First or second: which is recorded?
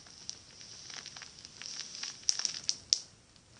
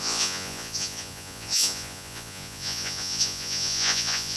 first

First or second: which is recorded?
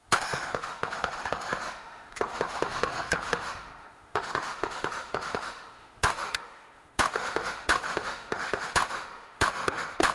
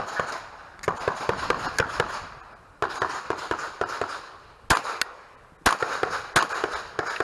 second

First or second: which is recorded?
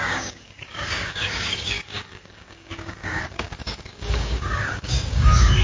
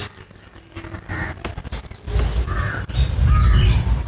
second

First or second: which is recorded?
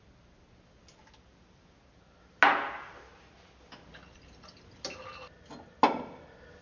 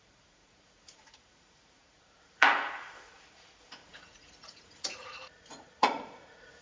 first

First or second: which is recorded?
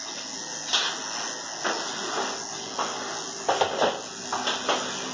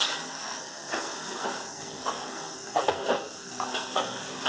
first